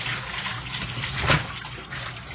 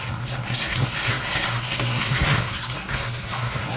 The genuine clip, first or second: first